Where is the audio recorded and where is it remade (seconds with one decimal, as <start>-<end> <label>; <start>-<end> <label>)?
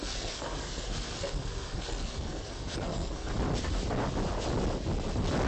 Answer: 0.0-3.3 remade; 3.3-5.5 recorded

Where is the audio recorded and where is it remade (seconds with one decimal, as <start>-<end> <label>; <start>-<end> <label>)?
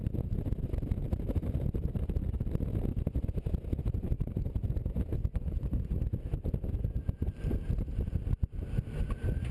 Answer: 0.0-5.3 recorded; 5.3-6.0 remade; 6.0-9.5 recorded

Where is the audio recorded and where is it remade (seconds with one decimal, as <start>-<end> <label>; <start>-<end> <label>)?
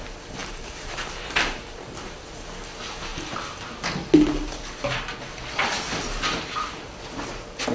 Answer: 0.0-0.4 recorded; 0.4-2.3 remade; 2.3-3.1 recorded; 3.1-3.7 remade; 3.7-7.7 recorded